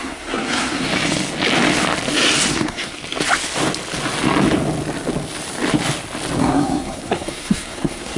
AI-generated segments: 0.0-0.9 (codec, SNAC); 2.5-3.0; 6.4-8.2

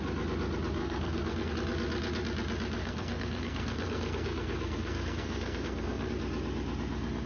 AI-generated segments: 0.8-1.5 (codec, SNAC); 2.8-6.1

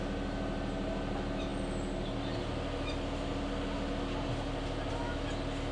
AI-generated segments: none